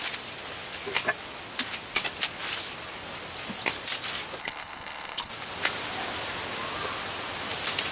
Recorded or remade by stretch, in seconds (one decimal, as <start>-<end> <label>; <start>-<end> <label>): 0.0-4.4 recorded; 4.4-5.3 remade; 5.3-7.9 recorded